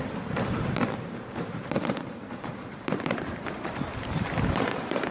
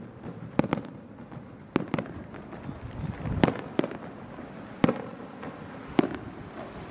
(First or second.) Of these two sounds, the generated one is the first